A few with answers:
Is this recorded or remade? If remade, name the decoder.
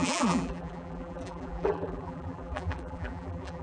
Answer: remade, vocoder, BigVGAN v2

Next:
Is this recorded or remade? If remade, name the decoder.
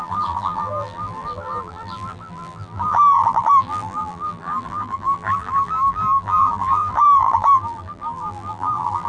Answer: remade, vocoder, BigVGAN v2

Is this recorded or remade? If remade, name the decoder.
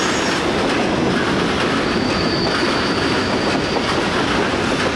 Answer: recorded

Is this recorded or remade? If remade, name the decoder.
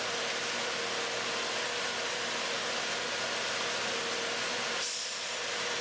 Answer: recorded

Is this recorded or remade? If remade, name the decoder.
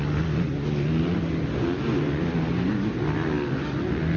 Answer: recorded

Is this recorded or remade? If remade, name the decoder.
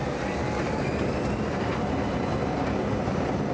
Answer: remade, vocoder, BigVGAN v2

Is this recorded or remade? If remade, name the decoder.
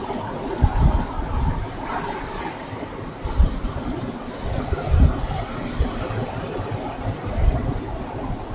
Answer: remade, vocoder, BigVGAN v2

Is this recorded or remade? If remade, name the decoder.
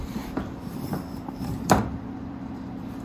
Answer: remade, vocoder, BigVGAN v2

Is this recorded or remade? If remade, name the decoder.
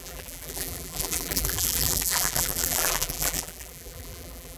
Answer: remade, vocoder, BigVGAN v2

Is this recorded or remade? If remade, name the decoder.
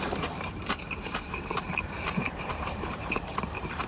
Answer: remade, vocoder, BigVGAN v2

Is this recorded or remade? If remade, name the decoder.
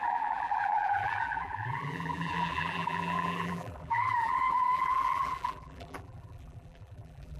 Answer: remade, vocoder, BigVGAN v2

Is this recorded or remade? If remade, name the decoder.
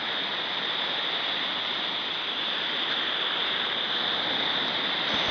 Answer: recorded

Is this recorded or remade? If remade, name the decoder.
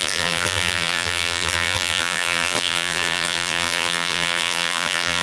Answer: remade, vocoder, BigVGAN v2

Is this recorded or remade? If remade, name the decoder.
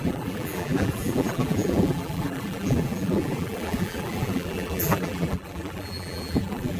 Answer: remade, vocoder, BigVGAN v2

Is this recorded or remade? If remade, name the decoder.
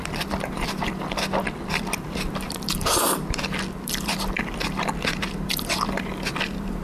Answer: remade, vocoder, BigVGAN v2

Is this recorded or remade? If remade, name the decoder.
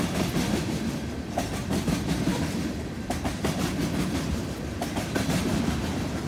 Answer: remade, vocoder, BigVGAN v2